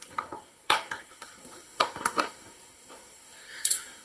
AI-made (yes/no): yes